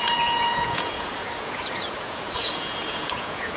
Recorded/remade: remade